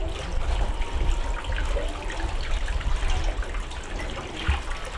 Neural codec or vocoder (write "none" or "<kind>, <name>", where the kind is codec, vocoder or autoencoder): none